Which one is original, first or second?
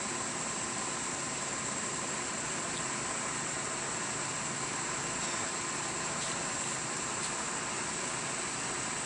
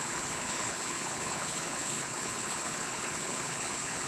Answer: first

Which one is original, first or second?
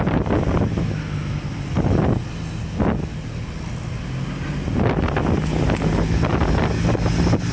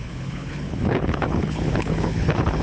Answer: first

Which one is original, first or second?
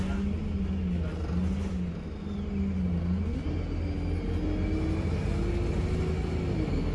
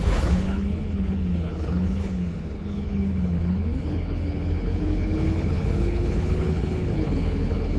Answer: first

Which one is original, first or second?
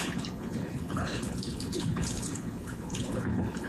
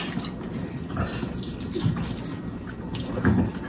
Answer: second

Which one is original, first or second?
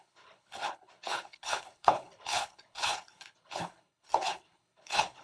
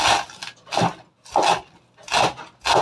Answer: second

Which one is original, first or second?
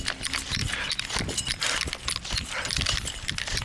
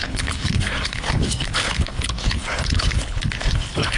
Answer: first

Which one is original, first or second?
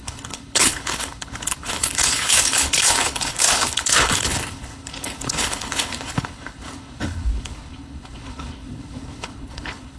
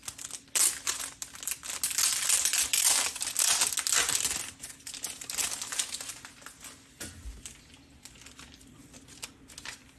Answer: second